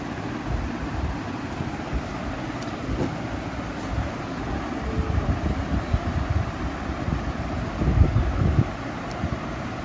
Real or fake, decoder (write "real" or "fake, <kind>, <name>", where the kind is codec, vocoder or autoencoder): real